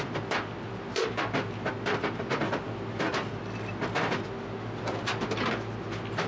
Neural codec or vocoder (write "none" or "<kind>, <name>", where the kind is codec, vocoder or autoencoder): none